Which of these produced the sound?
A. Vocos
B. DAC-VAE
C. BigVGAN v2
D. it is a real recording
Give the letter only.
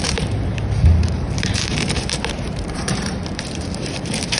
C